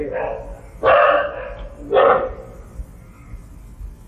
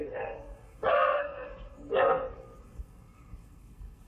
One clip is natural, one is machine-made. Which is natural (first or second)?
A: first